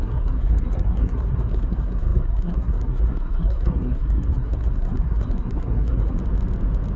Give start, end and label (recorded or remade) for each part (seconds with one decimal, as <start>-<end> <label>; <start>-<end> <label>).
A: 0.0-6.2 remade; 6.2-7.0 recorded